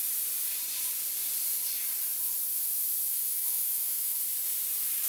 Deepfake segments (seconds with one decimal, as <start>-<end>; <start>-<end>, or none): 3.1-4.2